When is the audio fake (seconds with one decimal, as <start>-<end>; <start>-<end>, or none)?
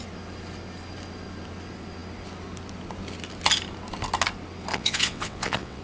4.7-5.8